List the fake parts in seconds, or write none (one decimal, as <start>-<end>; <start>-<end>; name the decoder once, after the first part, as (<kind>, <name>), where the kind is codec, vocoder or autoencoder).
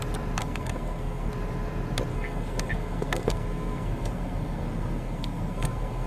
0.4-1.3 (codec, SNAC); 2.1-6.1